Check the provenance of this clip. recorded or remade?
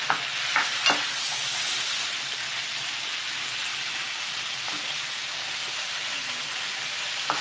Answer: recorded